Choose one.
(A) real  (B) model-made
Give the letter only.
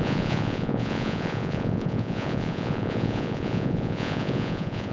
B